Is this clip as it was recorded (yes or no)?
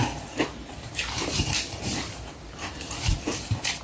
no